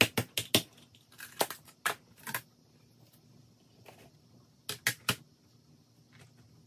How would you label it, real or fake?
real